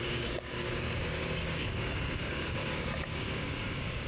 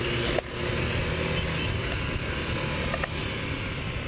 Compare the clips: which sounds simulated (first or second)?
first